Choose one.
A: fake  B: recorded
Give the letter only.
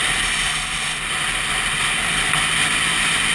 B